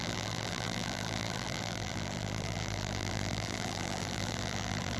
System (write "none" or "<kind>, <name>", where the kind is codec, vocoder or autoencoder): vocoder, BigVGAN v2